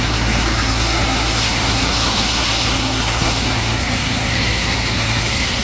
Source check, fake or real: fake